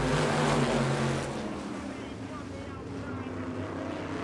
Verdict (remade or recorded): recorded